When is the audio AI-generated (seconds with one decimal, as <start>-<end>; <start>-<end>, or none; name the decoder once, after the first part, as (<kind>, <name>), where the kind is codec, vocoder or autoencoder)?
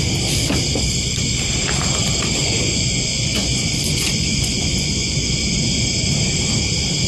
2.4-6.1 (vocoder, Vocos)